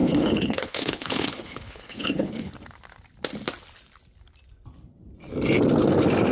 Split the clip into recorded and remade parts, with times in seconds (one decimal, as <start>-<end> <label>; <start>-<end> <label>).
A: 0.0-2.5 remade; 2.5-6.3 recorded